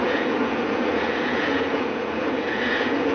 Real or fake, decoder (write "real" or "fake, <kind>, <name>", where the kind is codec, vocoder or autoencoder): fake, vocoder, Vocos